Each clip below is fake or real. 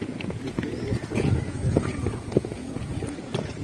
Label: fake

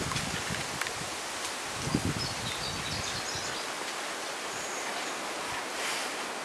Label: real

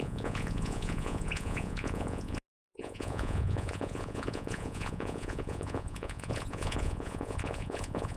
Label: fake